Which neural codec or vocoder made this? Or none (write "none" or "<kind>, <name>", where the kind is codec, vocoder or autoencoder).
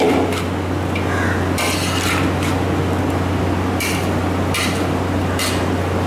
none